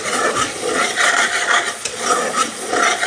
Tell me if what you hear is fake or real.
fake